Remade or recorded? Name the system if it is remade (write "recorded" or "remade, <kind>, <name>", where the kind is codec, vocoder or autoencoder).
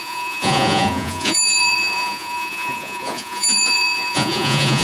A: remade, vocoder, Vocos